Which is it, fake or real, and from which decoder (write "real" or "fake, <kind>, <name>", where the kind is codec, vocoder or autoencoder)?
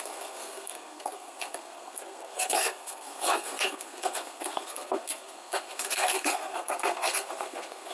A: fake, codec, SNAC